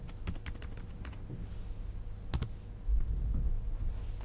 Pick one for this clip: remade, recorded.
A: recorded